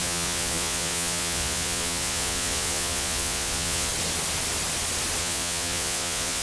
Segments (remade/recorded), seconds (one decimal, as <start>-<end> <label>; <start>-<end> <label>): 0.0-3.9 remade; 3.9-5.2 recorded; 5.2-6.4 remade